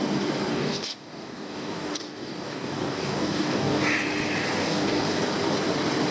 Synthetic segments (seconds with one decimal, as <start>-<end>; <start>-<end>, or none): 0.5-3.8; 4.6-5.2